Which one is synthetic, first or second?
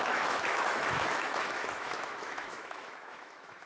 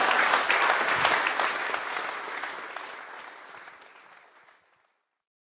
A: first